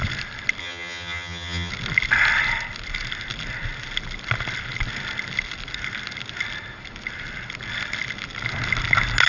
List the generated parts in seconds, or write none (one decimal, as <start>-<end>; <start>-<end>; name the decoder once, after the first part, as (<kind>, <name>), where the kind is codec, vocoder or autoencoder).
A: 0.6-1.7 (vocoder, HiFi-GAN)